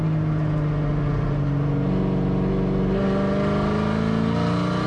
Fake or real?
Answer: real